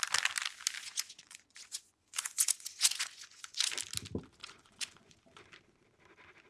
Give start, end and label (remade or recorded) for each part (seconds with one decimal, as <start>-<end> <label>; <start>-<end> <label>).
0.0-0.8 recorded; 0.8-3.7 remade; 3.7-4.4 recorded; 4.4-5.2 remade; 5.2-6.5 recorded

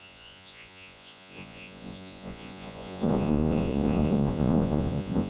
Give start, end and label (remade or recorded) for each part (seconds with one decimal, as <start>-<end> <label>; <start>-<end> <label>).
0.0-5.3 remade

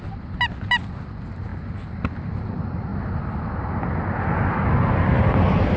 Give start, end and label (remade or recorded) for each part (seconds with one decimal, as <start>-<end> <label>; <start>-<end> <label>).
0.0-5.8 recorded

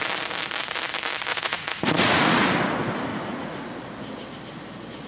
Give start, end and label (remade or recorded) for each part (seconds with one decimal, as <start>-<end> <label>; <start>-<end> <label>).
0.0-1.3 recorded; 1.3-2.5 remade; 2.5-3.1 recorded; 3.1-3.7 remade; 3.7-5.1 recorded

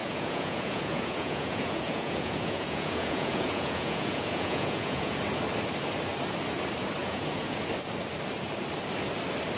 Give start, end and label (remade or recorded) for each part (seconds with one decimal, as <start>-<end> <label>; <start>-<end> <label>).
0.0-5.2 remade; 5.2-7.0 recorded; 7.0-7.7 remade; 7.7-9.6 recorded